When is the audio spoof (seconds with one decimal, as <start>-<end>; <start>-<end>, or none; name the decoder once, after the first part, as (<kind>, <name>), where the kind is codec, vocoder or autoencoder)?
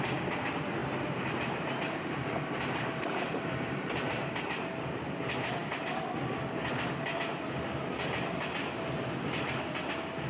0.8-4.3 (vocoder, BigVGAN v2)